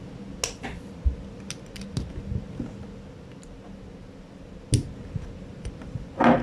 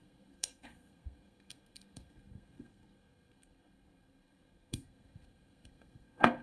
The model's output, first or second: second